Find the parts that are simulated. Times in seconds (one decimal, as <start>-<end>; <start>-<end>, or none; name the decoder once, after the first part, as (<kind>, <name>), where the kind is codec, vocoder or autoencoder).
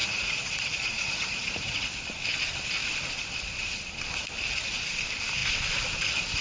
0.0-1.9 (vocoder, Vocos)